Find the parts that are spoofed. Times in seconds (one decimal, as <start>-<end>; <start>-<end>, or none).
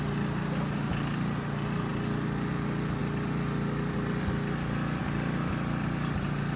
none